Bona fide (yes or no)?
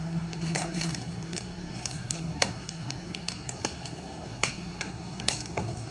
no